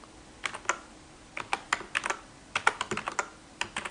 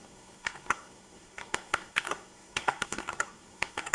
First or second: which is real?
first